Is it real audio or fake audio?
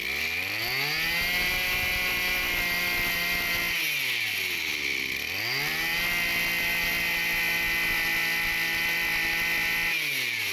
real